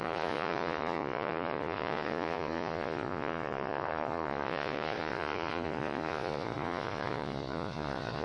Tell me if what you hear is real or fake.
fake